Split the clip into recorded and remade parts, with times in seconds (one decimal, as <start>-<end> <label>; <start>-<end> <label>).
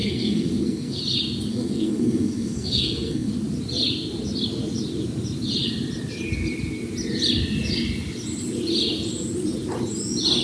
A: 0.0-1.0 remade; 1.0-1.5 recorded; 1.5-3.3 remade; 3.3-10.4 recorded